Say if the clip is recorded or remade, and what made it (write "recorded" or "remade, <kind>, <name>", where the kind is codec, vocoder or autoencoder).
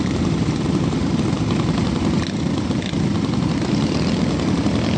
recorded